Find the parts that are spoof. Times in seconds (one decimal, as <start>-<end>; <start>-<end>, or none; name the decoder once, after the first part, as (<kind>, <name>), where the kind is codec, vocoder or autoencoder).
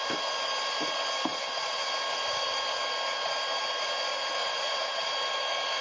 1.3-1.9 (vocoder, WaveNeXt); 4.4-5.1